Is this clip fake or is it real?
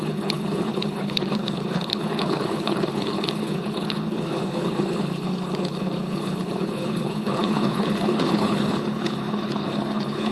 fake